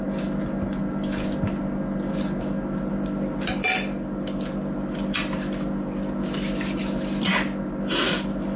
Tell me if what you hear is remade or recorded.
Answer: recorded